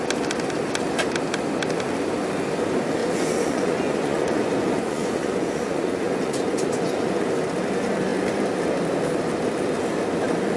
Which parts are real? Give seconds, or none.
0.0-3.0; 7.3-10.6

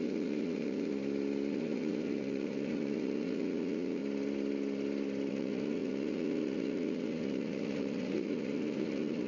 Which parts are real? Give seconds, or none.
0.9-1.5; 4.0-5.3

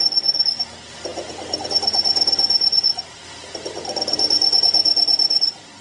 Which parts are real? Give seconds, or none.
0.0-5.8

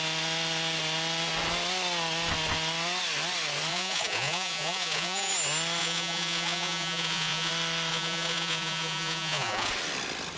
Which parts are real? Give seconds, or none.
0.0-3.7; 5.3-5.8; 7.5-7.9; 9.7-10.4

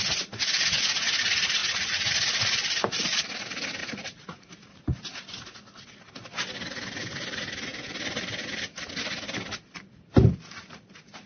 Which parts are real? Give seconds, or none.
0.0-1.6; 2.1-3.8; 4.5-11.3

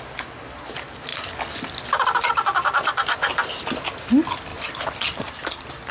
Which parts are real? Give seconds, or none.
0.0-5.9

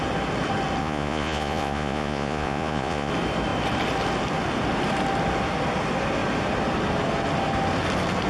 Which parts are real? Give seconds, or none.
0.0-0.8; 3.1-8.3

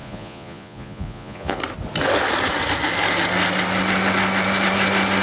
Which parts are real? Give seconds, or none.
1.6-5.2